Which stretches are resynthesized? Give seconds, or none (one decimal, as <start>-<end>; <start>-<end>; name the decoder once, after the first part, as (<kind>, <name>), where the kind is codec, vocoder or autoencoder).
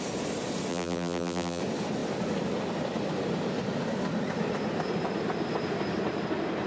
0.7-1.6 (vocoder, BigVGAN v2)